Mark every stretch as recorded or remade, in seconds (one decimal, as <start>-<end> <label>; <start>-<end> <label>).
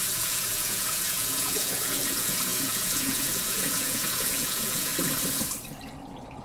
0.0-4.9 remade; 4.9-6.4 recorded